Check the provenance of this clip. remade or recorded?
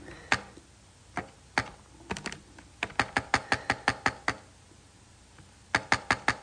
recorded